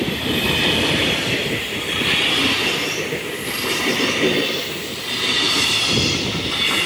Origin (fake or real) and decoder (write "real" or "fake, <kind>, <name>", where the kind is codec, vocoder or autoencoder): fake, vocoder, BigVGAN v2